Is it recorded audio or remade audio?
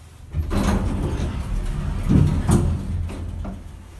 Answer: recorded